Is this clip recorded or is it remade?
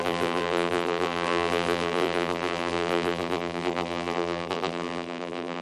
remade